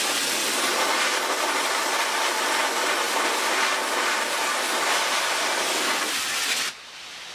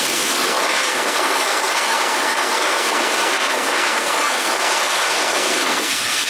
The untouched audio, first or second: first